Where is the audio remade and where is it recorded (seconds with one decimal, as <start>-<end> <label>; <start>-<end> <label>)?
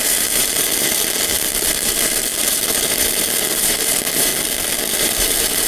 0.0-4.3 remade; 4.3-5.0 recorded; 5.0-5.7 remade